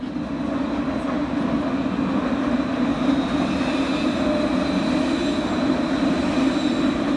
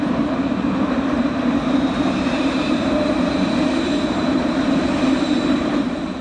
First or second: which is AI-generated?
second